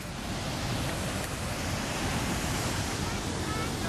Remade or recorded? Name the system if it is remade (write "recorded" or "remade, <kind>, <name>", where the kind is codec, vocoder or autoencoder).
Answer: recorded